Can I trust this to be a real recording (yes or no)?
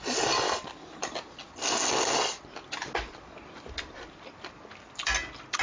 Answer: yes